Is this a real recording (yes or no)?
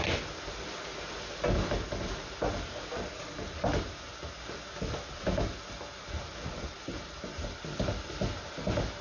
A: yes